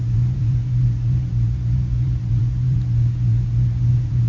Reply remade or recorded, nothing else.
remade